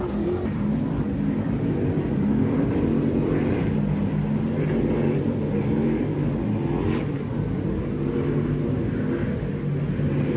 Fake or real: real